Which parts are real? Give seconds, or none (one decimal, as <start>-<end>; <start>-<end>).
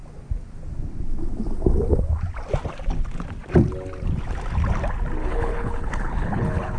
0.0-5.2